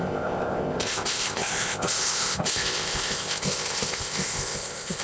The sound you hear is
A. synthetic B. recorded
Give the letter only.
A